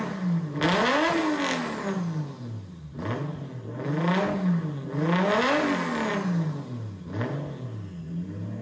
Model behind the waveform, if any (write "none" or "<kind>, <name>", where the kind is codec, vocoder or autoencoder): none